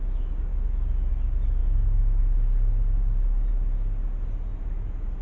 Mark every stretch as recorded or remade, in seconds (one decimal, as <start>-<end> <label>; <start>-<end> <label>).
0.0-5.2 recorded